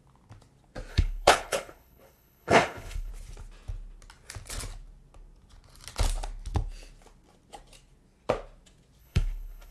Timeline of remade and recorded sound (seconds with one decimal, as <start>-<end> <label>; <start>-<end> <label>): 0.0-0.9 recorded; 0.9-3.1 remade; 3.1-9.0 recorded; 9.0-9.7 remade

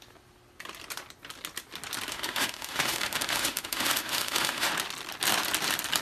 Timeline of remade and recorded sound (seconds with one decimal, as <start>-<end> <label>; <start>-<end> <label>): 0.0-2.1 recorded; 2.1-4.7 remade; 4.7-6.0 recorded